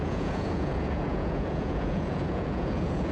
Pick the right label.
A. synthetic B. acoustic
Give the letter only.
A